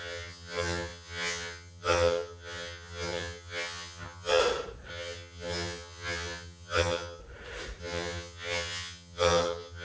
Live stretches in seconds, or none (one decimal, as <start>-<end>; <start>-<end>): 4.4-4.9; 7.2-7.8